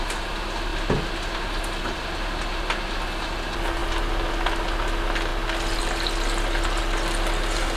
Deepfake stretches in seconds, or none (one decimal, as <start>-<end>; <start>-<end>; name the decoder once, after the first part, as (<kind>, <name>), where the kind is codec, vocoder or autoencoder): none